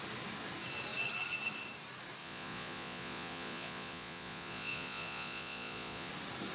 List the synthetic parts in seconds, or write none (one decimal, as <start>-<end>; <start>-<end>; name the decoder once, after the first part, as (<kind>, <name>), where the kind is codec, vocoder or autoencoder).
2.2-6.1 (vocoder, Vocos)